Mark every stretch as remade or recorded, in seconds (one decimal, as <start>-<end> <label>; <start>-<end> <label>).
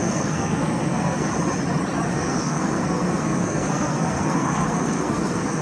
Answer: 0.0-1.3 remade; 1.3-2.1 recorded; 2.1-5.6 remade